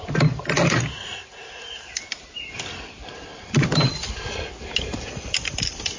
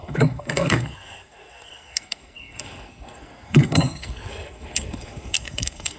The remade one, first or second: second